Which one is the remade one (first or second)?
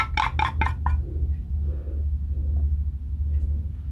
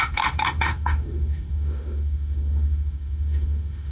second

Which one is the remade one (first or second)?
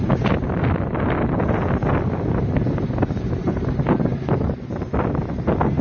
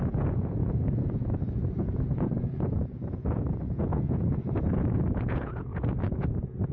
second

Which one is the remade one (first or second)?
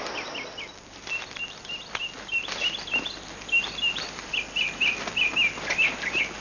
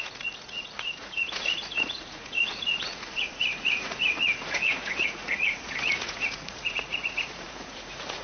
second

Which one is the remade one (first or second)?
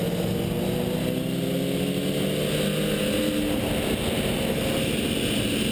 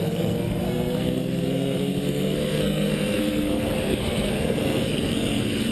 second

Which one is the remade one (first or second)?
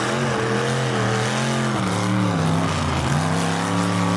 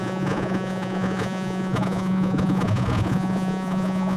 second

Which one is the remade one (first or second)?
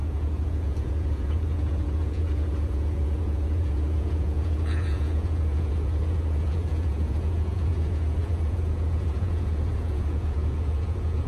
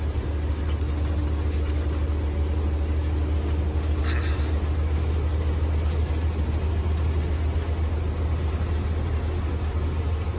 first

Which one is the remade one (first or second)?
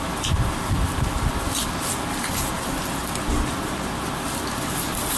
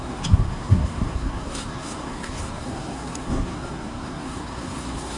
second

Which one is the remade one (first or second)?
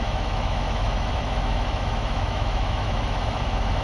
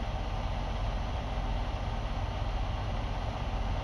first